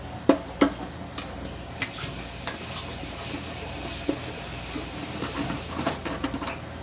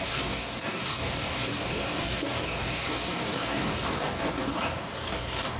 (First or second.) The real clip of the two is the first